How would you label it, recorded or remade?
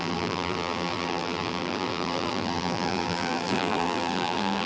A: remade